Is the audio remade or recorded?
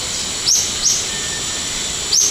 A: recorded